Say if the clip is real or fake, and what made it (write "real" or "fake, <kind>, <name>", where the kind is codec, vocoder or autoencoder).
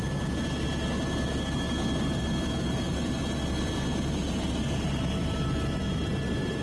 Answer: real